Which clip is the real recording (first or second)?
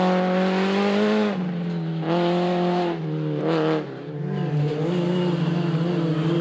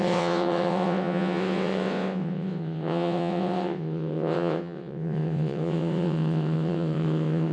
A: first